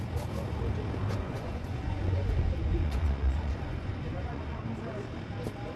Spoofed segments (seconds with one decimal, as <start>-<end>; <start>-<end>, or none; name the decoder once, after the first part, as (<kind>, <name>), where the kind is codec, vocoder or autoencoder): 1.1-4.6 (vocoder, Vocos)